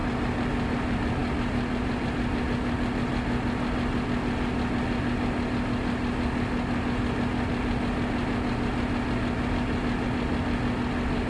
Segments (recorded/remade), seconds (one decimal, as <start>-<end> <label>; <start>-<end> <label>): 0.0-11.3 recorded